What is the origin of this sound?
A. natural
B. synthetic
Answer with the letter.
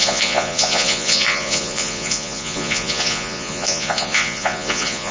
B